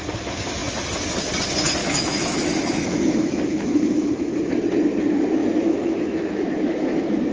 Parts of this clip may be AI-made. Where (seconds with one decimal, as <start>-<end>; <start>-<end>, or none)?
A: 1.8-4.3; 5.4-7.3